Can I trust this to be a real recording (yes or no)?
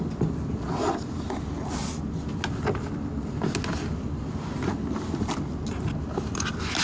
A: yes